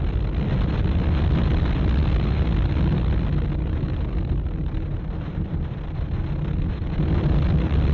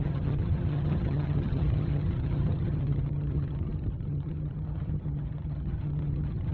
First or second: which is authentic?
first